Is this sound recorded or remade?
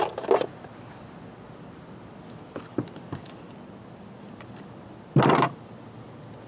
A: recorded